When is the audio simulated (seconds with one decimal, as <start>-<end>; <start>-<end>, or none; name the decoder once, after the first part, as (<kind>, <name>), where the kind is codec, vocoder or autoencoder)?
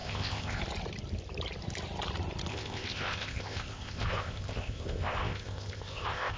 0.0-0.6 (codec, ZipCodec); 2.5-6.4